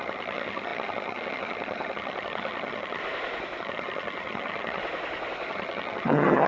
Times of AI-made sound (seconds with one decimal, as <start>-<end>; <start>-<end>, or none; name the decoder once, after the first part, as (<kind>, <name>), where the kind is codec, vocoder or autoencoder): 0.0-3.0 (vocoder, HiFi-GAN); 3.6-4.8; 5.5-6.5